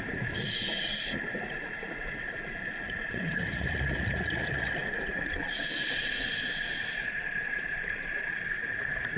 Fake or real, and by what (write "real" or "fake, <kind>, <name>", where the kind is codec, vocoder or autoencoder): fake, vocoder, Vocos